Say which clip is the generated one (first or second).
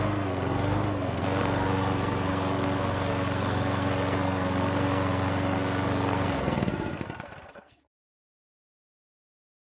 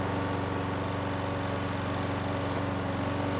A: first